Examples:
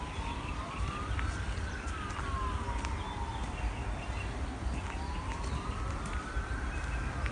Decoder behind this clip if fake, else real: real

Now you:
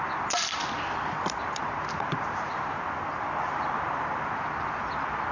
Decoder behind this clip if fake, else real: real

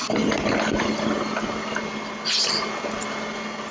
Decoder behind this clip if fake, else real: real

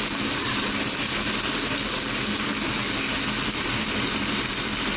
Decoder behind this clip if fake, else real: real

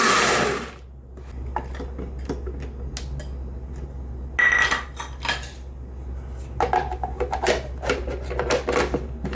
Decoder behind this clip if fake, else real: real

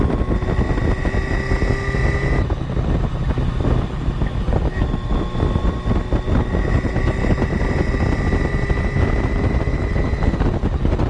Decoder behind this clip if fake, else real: real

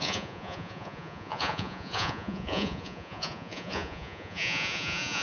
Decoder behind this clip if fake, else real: fake, vocoder, Vocos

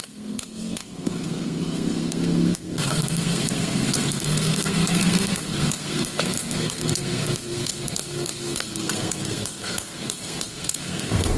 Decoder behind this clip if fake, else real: fake, codec, SNAC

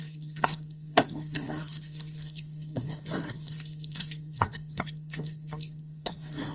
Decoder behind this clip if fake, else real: fake, codec, SNAC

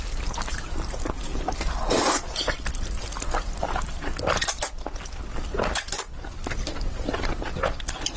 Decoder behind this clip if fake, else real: real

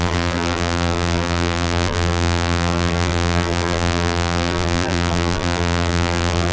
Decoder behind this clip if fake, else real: fake, vocoder, BigVGAN v2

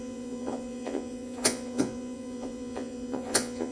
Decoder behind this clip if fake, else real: fake, vocoder, Vocos